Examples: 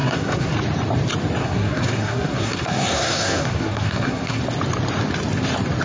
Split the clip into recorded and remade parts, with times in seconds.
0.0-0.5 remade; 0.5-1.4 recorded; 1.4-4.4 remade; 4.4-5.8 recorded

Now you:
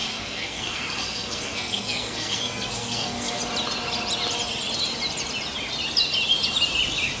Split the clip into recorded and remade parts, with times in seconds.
0.0-3.4 remade; 3.4-7.2 recorded

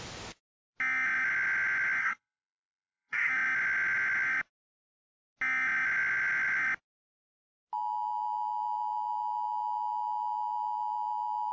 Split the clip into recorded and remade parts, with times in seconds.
0.0-2.0 recorded; 2.0-3.3 remade; 3.3-11.5 recorded